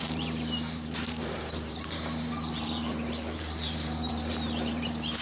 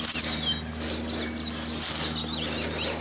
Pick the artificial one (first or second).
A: first